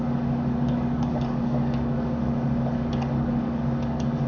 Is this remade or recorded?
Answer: remade